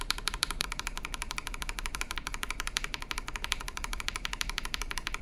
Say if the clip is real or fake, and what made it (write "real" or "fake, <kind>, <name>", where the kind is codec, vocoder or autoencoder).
fake, vocoder, BigVGAN v2